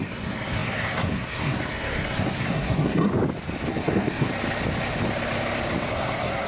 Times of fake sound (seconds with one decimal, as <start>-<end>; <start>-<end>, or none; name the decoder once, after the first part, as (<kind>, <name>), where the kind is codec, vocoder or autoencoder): 0.0-3.1 (codec, SNAC); 3.7-4.3; 5.9-6.5